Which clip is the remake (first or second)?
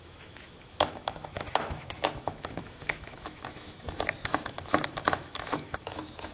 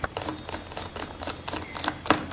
first